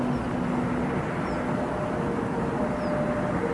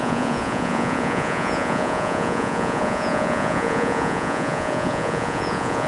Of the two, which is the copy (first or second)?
second